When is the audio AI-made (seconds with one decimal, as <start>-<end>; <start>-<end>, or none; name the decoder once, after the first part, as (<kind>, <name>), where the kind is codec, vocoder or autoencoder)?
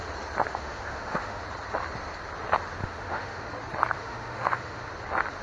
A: 0.5-1.4 (autoencoder, DAC-VAE); 2.8-3.5; 4.0-4.9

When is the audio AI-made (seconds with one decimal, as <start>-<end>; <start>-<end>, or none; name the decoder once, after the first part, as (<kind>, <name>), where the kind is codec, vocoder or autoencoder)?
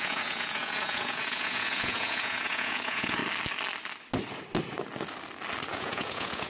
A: 0.0-3.2 (vocoder, Vocos); 5.7-6.5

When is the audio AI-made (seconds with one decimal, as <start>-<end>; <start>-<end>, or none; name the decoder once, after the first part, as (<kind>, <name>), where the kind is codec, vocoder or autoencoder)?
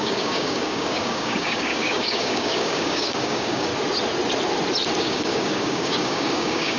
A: 0.0-3.7 (codec, DAC); 5.0-6.8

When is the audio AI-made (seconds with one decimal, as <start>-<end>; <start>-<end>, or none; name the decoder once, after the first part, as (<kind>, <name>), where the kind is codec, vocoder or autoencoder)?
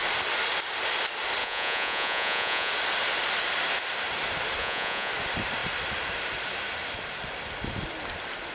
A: 1.4-2.7 (vocoder, Vocos); 4.6-5.1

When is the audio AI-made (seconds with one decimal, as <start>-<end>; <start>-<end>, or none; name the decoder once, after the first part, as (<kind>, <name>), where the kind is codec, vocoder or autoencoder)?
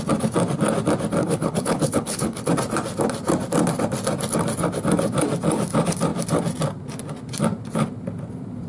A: 1.2-2.5 (codec, HILCodec)